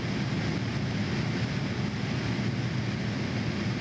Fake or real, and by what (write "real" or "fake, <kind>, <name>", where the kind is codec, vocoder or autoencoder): real